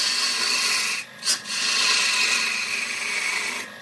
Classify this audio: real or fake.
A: real